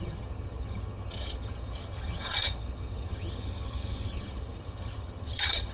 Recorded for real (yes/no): no